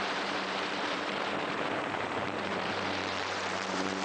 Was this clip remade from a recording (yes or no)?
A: yes